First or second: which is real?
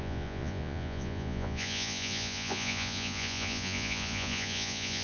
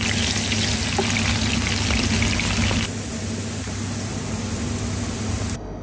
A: second